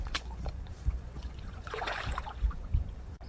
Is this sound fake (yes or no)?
yes